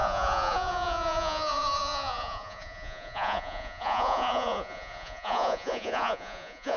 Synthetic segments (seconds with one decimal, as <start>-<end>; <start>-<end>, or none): 0.0-6.8